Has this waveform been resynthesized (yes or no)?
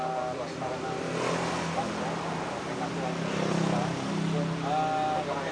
no